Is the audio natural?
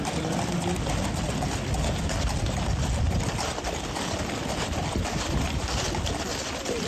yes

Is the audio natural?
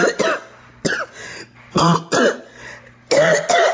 yes